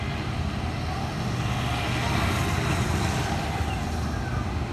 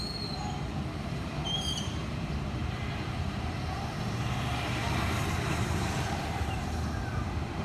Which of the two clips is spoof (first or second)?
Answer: second